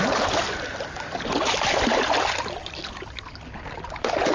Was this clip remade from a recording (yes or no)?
no